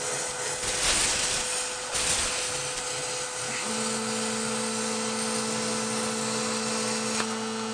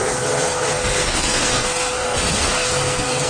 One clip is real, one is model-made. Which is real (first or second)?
first